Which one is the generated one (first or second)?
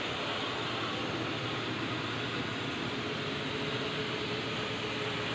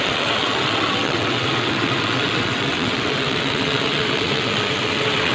second